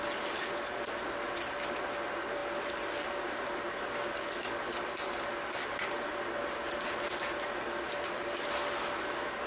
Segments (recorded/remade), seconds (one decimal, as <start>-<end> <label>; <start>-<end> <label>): 0.0-9.5 recorded